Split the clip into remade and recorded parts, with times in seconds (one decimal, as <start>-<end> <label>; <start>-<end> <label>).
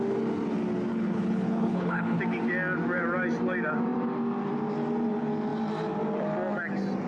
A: 0.0-0.9 recorded; 0.9-2.2 remade; 2.2-7.1 recorded